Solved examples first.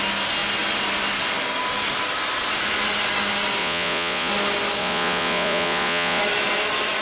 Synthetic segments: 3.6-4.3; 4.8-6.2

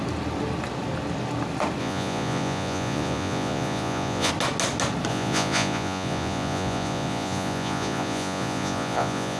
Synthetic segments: 1.8-4.3; 5.1-9.4

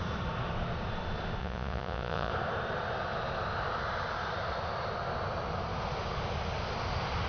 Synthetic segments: 1.4-2.3

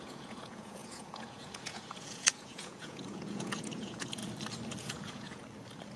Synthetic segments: 0.0-4.2; 4.8-5.4

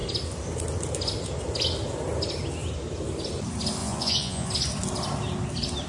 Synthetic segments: 3.8-4.5

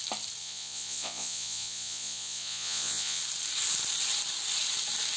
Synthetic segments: 0.4-3.2